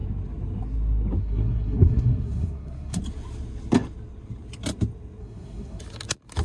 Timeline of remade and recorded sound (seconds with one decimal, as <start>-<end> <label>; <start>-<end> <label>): 0.0-1.2 recorded; 1.2-3.0 remade; 3.0-5.2 recorded; 5.2-5.8 remade; 5.8-6.4 recorded